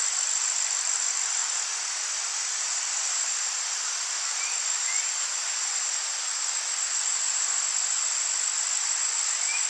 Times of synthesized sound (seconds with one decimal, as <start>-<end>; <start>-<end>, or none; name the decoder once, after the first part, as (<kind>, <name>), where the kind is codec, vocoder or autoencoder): none